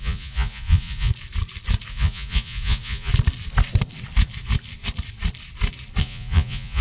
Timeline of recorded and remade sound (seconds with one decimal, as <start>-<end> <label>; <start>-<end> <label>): 0.0-1.1 remade; 1.1-1.9 recorded; 1.9-3.1 remade; 3.1-6.0 recorded; 6.0-6.8 remade